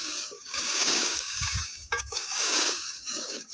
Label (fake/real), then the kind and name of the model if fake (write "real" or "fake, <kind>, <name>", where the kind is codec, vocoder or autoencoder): fake, codec, DAC